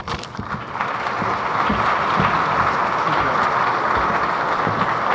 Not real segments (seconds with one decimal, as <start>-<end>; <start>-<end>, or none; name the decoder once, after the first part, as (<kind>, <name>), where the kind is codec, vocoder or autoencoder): none